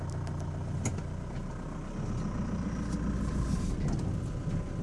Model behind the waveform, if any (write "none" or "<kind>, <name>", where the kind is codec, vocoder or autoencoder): none